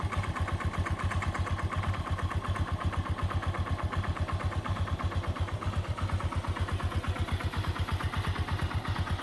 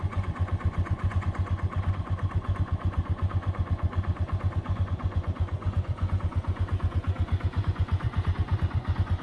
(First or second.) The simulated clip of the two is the second